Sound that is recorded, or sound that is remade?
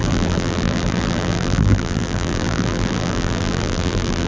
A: remade